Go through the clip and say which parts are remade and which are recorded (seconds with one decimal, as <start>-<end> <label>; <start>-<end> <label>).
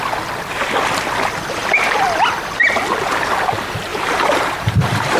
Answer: 0.0-3.9 recorded; 3.9-5.2 remade